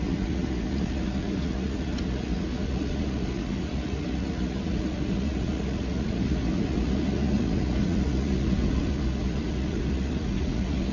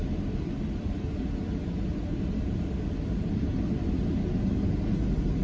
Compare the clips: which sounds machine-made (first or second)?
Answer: first